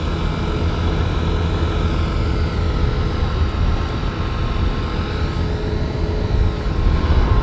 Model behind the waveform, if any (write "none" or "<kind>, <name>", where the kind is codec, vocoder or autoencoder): none